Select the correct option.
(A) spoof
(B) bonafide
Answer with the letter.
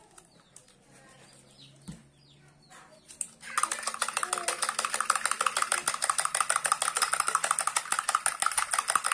B